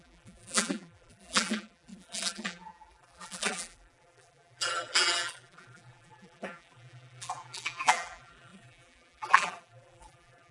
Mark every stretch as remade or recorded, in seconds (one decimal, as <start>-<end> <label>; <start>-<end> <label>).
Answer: 0.0-10.5 remade